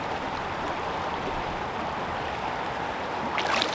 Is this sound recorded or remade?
recorded